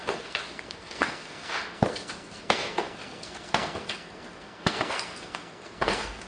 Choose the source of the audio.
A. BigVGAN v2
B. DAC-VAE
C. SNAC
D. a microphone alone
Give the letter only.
C